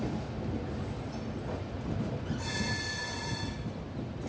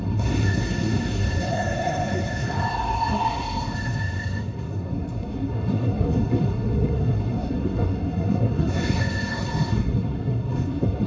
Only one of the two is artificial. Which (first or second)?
second